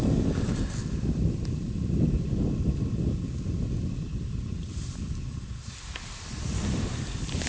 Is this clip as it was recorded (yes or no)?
yes